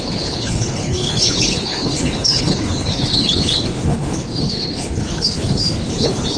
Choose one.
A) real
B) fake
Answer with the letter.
B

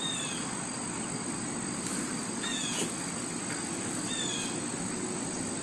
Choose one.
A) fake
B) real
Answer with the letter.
B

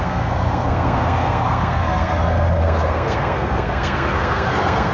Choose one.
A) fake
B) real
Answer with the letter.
A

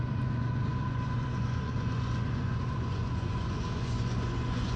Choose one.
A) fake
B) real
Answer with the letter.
A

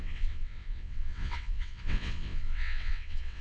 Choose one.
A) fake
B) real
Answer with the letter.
A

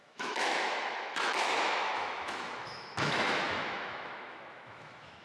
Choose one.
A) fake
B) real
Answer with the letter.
A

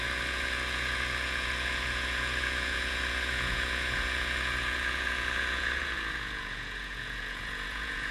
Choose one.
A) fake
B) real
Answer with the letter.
A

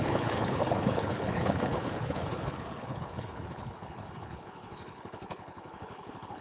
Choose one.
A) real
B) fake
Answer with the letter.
B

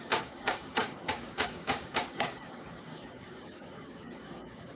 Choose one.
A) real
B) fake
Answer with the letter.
B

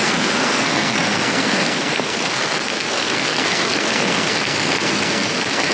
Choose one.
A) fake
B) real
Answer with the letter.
A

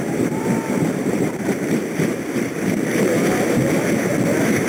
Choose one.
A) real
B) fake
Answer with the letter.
B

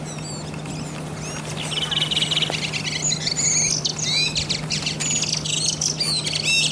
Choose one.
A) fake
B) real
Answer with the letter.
B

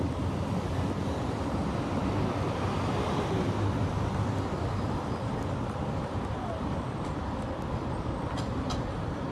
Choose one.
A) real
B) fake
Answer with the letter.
B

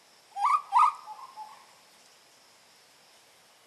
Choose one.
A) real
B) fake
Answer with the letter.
A